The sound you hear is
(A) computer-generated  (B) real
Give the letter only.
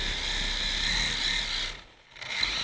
B